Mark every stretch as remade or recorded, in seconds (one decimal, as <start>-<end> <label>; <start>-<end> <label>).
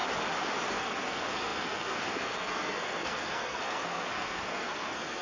0.0-0.7 recorded; 0.7-5.2 remade